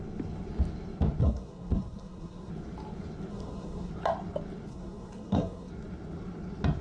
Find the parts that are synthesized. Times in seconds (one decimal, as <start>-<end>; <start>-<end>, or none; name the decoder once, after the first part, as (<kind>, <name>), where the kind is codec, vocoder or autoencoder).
1.2-2.5 (codec, SNAC); 3.3-3.9; 4.7-5.7